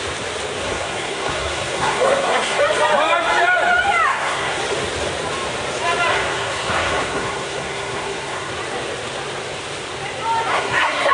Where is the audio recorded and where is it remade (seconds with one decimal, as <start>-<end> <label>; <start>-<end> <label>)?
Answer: 0.0-0.6 recorded; 0.6-2.6 remade; 2.6-4.1 recorded; 4.1-4.6 remade; 4.6-6.1 recorded; 6.1-8.5 remade; 8.5-10.5 recorded; 10.5-11.1 remade